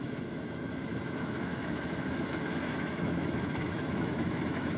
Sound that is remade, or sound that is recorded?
remade